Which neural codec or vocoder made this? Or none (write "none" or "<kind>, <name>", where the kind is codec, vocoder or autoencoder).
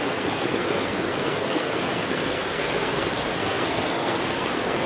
codec, SNAC